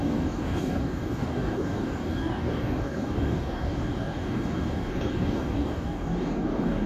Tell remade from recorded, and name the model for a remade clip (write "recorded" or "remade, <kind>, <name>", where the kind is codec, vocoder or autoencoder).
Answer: remade, codec, DAC